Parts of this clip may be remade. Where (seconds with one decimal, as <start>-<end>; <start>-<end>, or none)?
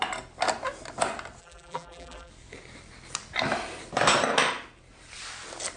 1.4-2.3